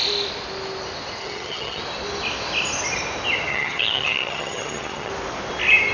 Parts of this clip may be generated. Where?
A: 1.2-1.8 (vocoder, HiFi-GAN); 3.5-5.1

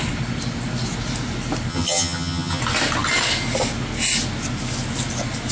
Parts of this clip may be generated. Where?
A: 1.7-2.6 (vocoder, HiFi-GAN)

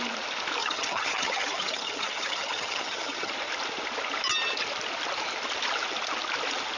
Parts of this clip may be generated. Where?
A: 0.6-3.3 (vocoder, HiFi-GAN)

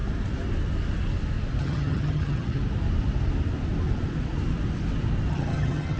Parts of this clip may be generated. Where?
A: 1.6-2.6 (vocoder, HiFi-GAN); 5.3-6.0